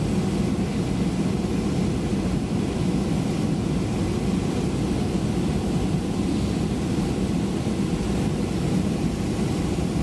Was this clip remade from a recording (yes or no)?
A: no